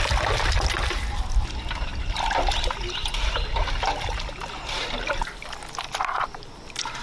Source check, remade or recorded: recorded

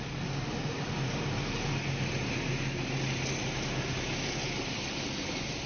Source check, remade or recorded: recorded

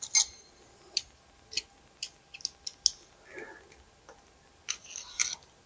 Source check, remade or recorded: recorded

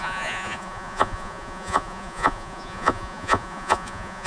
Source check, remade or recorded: remade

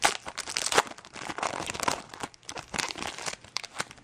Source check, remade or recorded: recorded